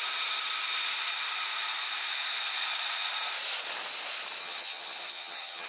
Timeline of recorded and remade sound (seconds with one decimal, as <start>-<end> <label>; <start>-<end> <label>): 0.0-4.4 recorded; 4.4-5.7 remade